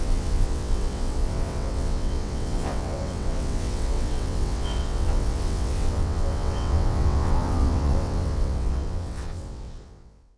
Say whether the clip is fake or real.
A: fake